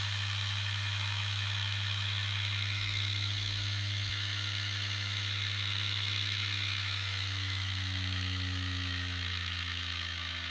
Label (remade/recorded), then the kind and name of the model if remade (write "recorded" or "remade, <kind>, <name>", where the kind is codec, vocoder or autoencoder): remade, autoencoder, DAC-VAE